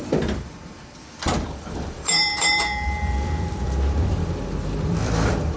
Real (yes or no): no